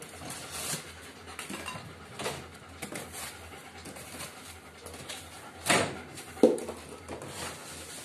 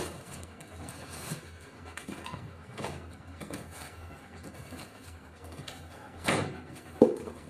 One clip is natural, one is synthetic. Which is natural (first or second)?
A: first